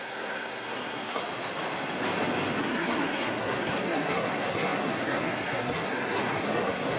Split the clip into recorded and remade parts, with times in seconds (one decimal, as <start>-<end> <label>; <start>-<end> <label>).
0.0-1.2 remade; 1.2-2.6 recorded; 2.6-7.0 remade